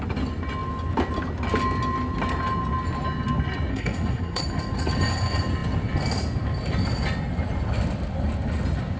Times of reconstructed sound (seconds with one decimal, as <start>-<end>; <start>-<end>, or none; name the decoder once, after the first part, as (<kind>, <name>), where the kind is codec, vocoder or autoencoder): 3.7-4.4 (codec, SNAC)